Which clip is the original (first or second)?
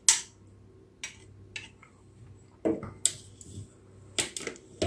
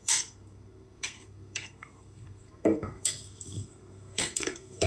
first